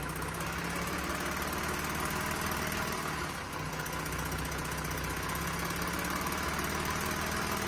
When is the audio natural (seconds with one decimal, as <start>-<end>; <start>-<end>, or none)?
0.0-3.7; 5.7-7.7

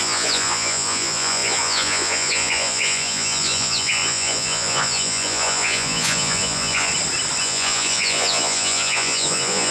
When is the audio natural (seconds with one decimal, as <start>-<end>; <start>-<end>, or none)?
6.9-7.4

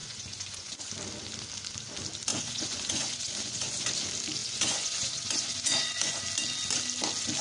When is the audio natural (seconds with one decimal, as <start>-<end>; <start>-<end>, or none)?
0.9-2.3; 3.9-4.4; 6.2-7.4

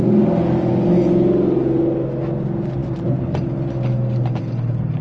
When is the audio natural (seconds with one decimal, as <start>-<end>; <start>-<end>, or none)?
0.0-5.0

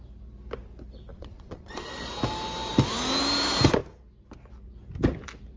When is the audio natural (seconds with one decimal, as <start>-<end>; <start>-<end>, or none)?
0.0-1.1; 2.1-5.6